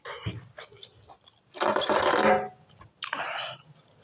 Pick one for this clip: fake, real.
real